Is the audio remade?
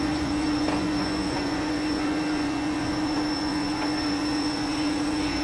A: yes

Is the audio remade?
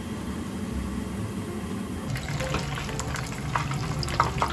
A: no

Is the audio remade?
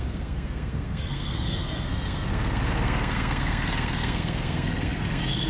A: yes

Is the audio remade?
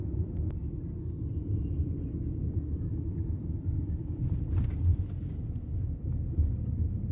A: yes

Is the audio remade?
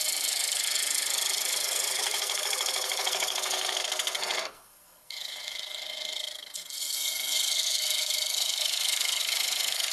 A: yes